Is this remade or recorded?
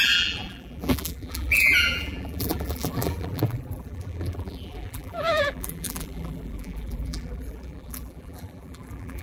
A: remade